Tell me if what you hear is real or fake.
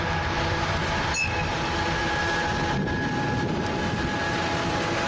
real